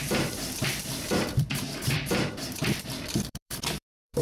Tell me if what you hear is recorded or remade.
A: remade